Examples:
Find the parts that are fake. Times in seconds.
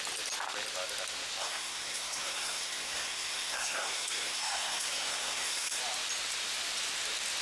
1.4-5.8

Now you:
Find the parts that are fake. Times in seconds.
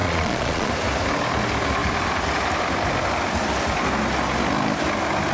0.0-0.7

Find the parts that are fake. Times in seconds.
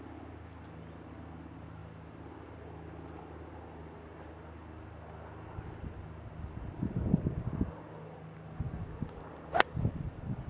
none